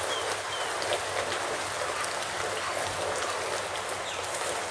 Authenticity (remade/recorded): recorded